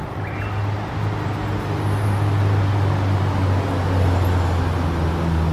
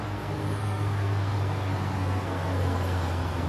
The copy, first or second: second